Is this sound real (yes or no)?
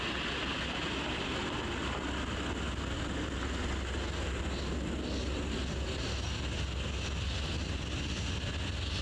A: yes